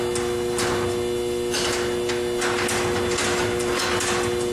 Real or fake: real